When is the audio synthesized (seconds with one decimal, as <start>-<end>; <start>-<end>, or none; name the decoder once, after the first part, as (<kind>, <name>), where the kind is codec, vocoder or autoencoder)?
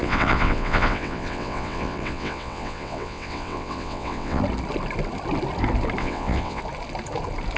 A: 0.0-4.4 (vocoder, WaveNeXt); 6.0-6.6